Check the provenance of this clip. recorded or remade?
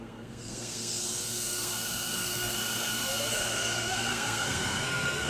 remade